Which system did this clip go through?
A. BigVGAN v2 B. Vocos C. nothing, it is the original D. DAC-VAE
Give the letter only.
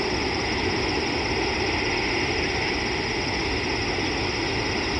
C